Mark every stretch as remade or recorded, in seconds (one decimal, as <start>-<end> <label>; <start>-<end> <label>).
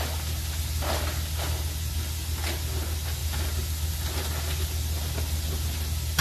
0.0-6.2 recorded